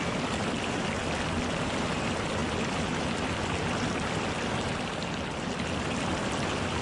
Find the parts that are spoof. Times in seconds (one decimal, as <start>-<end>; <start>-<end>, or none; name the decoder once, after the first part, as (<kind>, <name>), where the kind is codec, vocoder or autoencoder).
none